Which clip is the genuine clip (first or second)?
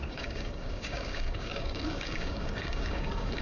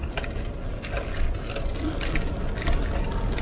second